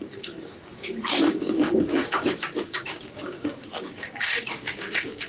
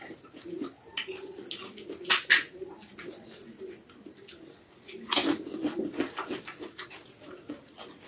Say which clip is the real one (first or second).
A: second